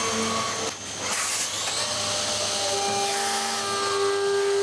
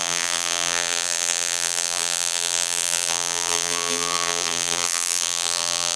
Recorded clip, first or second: first